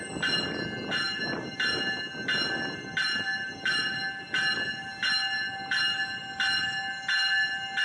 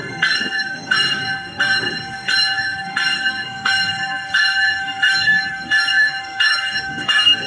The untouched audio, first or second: first